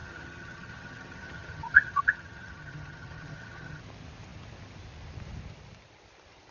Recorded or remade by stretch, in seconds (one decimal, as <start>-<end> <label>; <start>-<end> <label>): 0.0-3.8 remade; 3.8-6.5 recorded